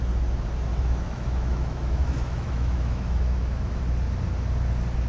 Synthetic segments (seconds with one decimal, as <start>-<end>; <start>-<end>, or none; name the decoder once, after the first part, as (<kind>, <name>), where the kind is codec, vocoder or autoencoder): 0.7-3.8 (autoencoder, DAC-VAE)